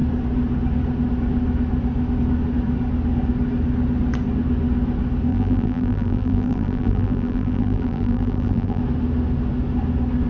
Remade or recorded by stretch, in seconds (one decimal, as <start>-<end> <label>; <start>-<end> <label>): 0.0-5.3 recorded; 5.3-8.8 remade; 8.8-10.3 recorded